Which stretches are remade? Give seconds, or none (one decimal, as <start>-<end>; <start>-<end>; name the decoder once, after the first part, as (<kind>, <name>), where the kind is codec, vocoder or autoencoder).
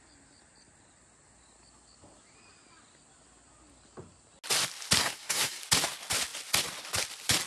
5.0-5.6 (codec, SNAC)